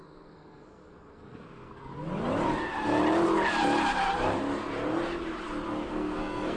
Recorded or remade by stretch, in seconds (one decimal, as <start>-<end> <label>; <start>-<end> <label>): 0.0-1.9 remade; 1.9-5.9 recorded; 5.9-6.6 remade